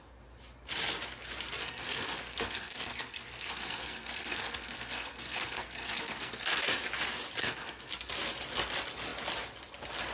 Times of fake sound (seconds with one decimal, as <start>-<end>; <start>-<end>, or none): 1.6-6.8; 7.4-7.9